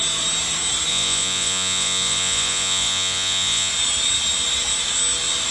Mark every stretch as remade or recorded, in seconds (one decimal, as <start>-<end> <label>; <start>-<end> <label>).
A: 0.0-0.9 recorded; 0.9-3.7 remade; 3.7-5.5 recorded